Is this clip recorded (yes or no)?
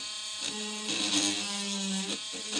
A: yes